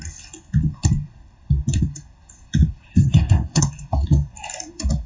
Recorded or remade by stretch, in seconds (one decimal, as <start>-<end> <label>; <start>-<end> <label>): 0.0-2.9 recorded; 2.9-3.6 remade; 3.6-5.1 recorded